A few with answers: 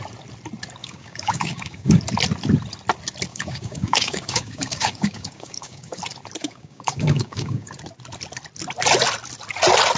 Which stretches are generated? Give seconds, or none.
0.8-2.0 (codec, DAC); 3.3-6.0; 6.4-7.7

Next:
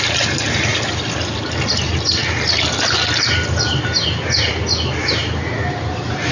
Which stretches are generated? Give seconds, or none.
none

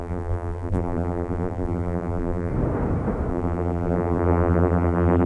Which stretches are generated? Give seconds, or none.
0.0-2.5 (vocoder, BigVGAN v2); 3.3-5.3

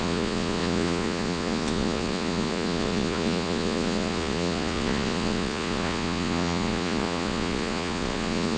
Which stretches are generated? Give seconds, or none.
0.0-8.6 (vocoder, Vocos)

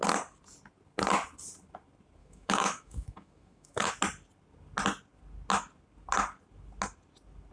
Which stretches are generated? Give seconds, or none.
2.2-3.9 (autoencoder, DAC-VAE)

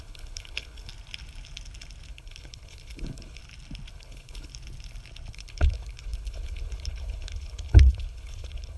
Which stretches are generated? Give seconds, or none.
0.0-0.9 (codec, HILCodec); 2.1-3.4; 3.9-4.5; 5.3-8.8